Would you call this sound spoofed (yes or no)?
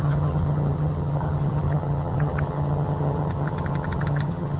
yes